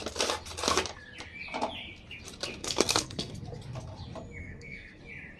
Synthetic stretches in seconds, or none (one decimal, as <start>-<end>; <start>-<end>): 2.6-3.3; 4.4-5.0